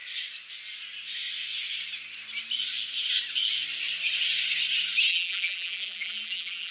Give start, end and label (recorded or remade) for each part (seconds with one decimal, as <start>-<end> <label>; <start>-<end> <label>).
0.0-5.1 recorded; 5.1-6.7 remade